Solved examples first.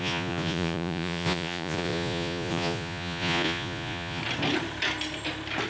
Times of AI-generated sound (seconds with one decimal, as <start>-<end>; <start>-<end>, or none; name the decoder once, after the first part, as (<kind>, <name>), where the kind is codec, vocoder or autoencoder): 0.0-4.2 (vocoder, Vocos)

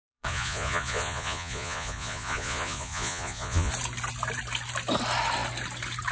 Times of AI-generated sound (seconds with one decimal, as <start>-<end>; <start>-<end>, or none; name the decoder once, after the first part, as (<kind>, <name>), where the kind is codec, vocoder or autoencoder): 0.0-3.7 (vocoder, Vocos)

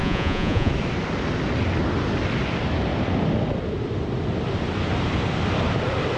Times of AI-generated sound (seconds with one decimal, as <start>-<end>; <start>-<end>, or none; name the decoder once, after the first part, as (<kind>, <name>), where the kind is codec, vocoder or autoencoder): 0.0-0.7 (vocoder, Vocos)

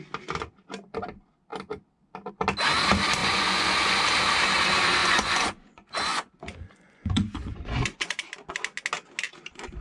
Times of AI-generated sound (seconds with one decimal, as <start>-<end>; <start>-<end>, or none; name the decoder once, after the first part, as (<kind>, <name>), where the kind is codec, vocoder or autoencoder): 3.2-4.0 (vocoder, Vocos); 5.0-8.3

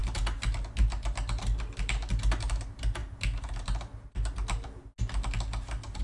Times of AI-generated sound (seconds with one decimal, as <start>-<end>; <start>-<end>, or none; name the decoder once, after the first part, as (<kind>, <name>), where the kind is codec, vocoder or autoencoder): none

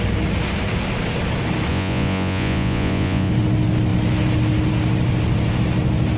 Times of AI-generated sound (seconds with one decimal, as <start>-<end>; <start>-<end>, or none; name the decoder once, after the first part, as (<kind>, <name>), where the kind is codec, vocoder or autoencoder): 1.7-3.3 (vocoder, Vocos)